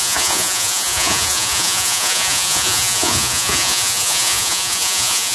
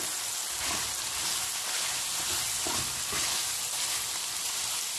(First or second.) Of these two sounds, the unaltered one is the second